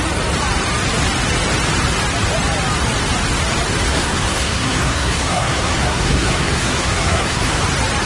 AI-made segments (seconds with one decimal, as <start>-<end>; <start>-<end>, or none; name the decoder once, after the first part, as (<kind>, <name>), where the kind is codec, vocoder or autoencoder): 3.9-7.6 (codec, SNAC)